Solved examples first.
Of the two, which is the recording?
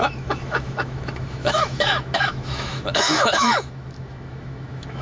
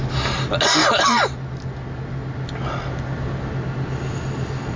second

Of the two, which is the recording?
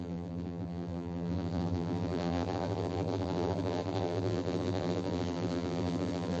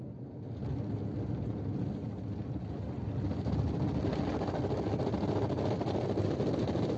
second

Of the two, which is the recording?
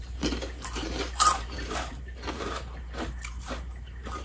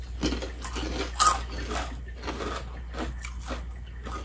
second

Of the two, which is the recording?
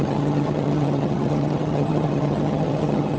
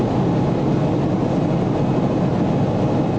second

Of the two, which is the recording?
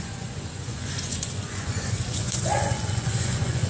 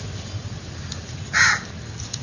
second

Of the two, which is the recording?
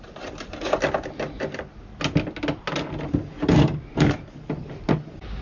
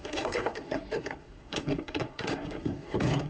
first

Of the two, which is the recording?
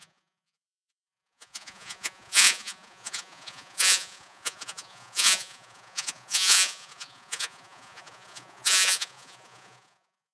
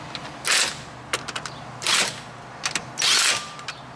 second